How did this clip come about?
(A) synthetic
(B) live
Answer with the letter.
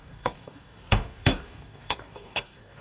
A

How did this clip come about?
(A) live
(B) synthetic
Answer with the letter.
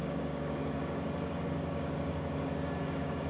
B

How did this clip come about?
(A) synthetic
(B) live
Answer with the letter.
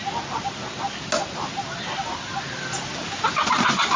B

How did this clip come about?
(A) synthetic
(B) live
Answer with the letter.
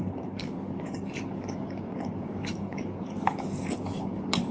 A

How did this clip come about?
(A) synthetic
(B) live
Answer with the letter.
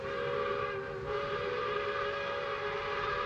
B